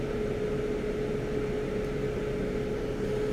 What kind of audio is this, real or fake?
real